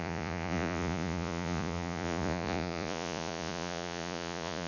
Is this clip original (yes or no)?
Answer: no